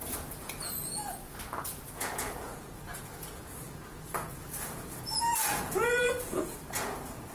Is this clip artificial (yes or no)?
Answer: yes